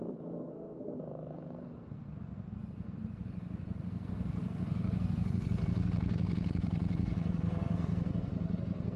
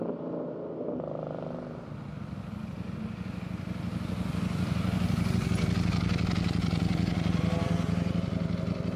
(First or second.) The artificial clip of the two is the first